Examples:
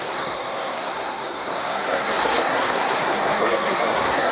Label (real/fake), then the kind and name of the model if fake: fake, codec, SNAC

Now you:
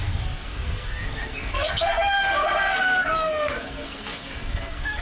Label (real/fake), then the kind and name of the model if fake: fake, codec, SNAC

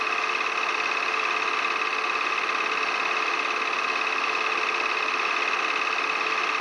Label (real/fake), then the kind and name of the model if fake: real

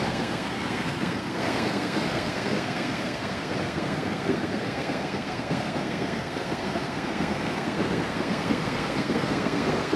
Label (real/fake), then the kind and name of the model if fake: fake, codec, SNAC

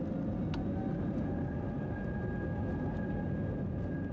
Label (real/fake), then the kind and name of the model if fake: real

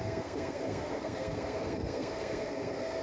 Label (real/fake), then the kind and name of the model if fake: fake, codec, SNAC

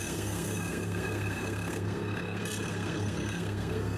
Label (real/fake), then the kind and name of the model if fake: fake, codec, SNAC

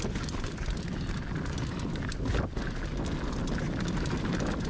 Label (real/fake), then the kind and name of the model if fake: real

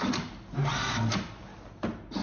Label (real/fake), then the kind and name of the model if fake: real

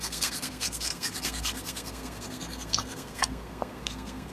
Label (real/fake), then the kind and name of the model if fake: fake, codec, SNAC